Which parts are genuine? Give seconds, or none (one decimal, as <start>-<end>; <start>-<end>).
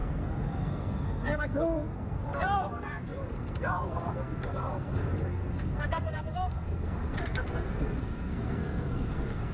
none